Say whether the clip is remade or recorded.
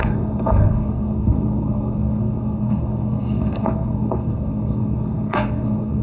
remade